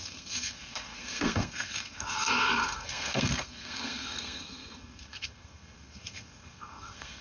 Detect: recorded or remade remade